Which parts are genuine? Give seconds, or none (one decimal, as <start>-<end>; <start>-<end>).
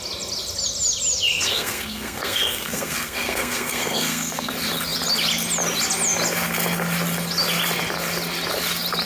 0.0-1.3; 4.5-9.1